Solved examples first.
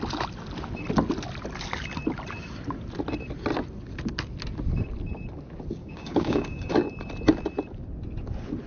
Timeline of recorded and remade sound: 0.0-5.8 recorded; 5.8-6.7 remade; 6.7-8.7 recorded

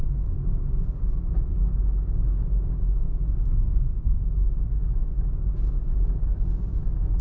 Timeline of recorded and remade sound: 0.0-7.2 remade

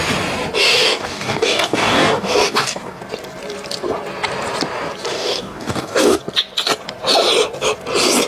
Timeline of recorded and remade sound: 0.0-0.6 recorded; 0.6-3.0 remade; 3.0-5.1 recorded; 5.1-6.2 remade; 6.2-8.3 recorded

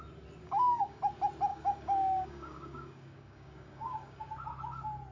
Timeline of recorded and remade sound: 0.0-0.4 recorded; 0.4-1.0 remade; 1.0-1.5 recorded; 1.5-4.3 remade; 4.3-5.1 recorded

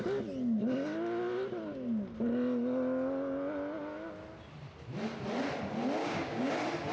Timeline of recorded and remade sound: 0.0-6.0 recorded; 6.0-6.5 remade; 6.5-6.9 recorded

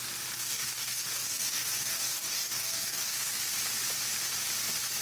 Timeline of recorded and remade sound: 0.0-0.4 recorded; 0.4-3.4 remade; 3.4-5.0 recorded

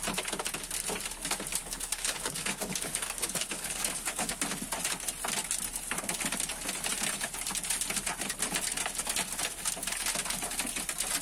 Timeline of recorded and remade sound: 0.0-1.6 recorded; 1.6-4.4 remade; 4.4-11.2 recorded